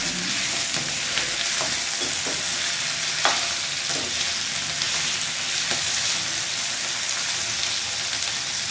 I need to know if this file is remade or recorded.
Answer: recorded